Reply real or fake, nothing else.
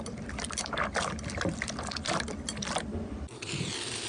fake